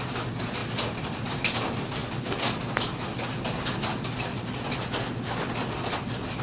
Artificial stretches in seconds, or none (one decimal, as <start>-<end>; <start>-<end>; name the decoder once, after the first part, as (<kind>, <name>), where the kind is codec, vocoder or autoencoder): 0.0-2.0 (vocoder, BigVGAN v2); 5.8-6.4